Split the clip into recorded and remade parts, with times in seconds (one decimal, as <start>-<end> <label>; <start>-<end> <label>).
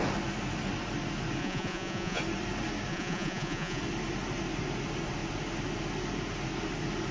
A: 0.0-1.4 recorded; 1.4-2.2 remade; 2.2-2.9 recorded; 2.9-3.8 remade; 3.8-7.1 recorded